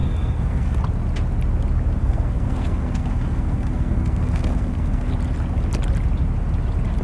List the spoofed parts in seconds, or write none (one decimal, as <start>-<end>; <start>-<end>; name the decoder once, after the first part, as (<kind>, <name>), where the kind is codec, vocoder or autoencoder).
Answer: 0.0-0.8 (codec, SNAC); 2.0-5.1